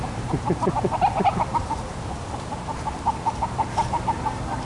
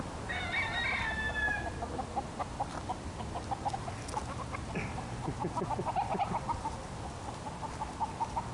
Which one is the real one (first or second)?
second